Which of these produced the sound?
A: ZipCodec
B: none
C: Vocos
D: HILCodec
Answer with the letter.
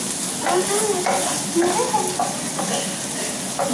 B